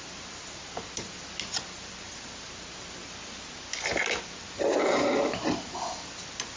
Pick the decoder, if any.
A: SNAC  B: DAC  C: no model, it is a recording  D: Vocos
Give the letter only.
C